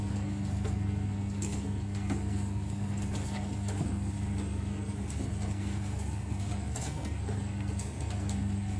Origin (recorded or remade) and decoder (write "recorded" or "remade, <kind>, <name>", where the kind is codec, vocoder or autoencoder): remade, codec, SNAC